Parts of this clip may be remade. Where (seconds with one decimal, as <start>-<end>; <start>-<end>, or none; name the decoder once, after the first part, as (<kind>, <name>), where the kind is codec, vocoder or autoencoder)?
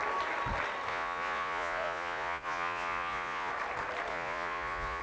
0.9-3.5 (vocoder, Vocos); 4.1-5.0